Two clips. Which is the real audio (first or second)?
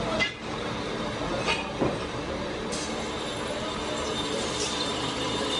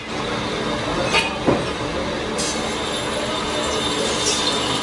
second